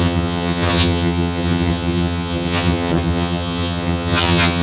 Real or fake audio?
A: fake